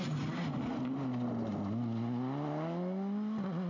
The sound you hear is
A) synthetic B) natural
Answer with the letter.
B